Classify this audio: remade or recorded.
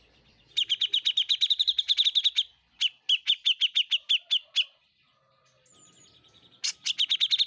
recorded